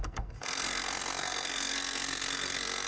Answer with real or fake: fake